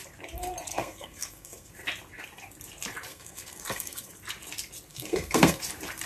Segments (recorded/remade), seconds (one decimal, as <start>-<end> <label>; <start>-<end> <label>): 0.0-0.7 recorded; 0.7-1.7 remade; 1.7-3.1 recorded; 3.1-4.1 remade; 4.1-4.9 recorded; 4.9-5.6 remade; 5.6-6.1 recorded

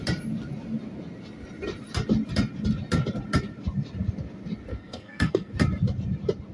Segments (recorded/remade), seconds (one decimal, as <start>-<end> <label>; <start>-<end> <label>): 0.0-4.7 recorded; 4.7-5.5 remade; 5.5-6.5 recorded

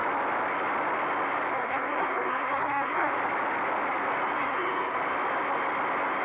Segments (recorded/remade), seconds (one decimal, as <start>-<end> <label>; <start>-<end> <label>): 0.0-1.5 recorded; 1.5-3.1 remade; 3.1-4.4 recorded; 4.4-5.0 remade; 5.0-6.2 recorded

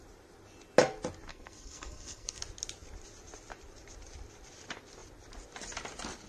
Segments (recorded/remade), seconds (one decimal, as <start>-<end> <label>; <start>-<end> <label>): 0.0-1.3 recorded; 1.3-2.4 remade; 2.4-6.3 recorded

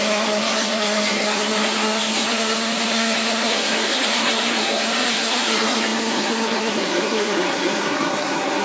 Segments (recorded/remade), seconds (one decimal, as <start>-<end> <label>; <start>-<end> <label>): 0.0-8.6 remade

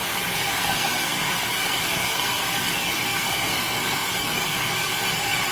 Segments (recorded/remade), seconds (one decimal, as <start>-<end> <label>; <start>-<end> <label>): 0.0-5.5 remade